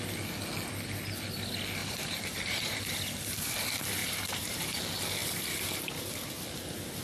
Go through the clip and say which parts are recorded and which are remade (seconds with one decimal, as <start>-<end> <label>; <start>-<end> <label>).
0.0-1.8 recorded; 1.8-3.5 remade; 3.5-4.0 recorded; 4.0-4.6 remade; 4.6-7.0 recorded